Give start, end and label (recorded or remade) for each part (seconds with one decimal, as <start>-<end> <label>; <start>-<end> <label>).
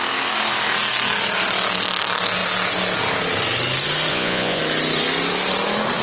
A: 0.0-4.1 recorded; 4.1-4.6 remade; 4.6-6.0 recorded